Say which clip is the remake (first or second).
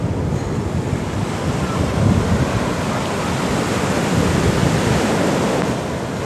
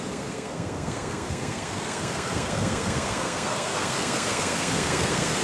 second